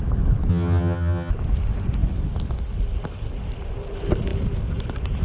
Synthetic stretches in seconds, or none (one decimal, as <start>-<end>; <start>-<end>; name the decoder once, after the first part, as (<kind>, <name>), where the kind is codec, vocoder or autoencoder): 0.5-1.3 (vocoder, HiFi-GAN)

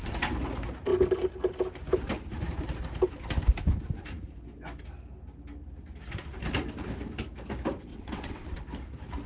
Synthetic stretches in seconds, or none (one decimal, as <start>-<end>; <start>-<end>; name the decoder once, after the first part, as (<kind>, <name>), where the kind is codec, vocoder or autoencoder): 7.9-8.6 (vocoder, WaveNeXt)

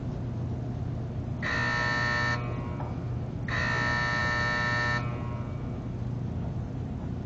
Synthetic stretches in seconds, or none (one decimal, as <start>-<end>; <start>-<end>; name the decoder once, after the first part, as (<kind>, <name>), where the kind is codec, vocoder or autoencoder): none

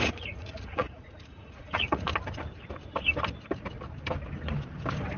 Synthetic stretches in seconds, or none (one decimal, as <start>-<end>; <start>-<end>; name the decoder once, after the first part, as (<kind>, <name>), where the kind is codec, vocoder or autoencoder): 0.0-2.1 (vocoder, Vocos)

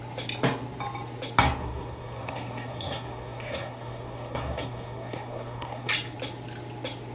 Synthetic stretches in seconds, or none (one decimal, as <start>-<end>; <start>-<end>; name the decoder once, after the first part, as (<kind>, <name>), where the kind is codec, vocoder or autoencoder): 1.6-5.9 (codec, SNAC)

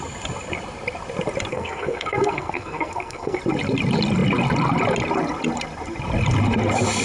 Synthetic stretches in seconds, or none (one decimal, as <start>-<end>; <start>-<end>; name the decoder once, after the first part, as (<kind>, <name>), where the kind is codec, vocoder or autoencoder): 1.5-3.4 (codec, SNAC)